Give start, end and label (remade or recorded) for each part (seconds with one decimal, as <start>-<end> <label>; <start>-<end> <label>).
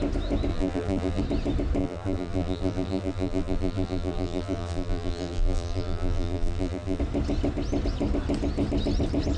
0.0-0.5 recorded; 0.5-1.2 remade; 1.2-1.8 recorded; 1.8-7.0 remade; 7.0-9.4 recorded